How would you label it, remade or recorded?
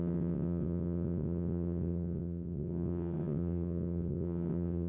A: remade